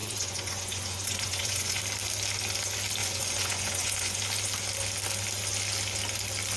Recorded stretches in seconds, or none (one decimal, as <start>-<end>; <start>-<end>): 1.8-3.0; 4.2-6.6